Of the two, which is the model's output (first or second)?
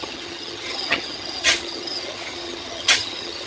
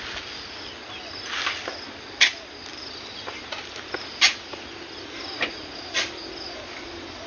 first